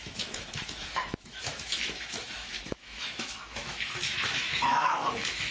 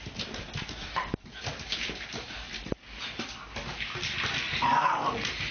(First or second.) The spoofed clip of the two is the first